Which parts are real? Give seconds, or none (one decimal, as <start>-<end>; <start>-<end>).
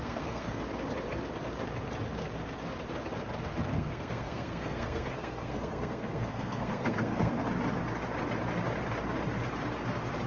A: 0.6-3.7; 7.5-10.3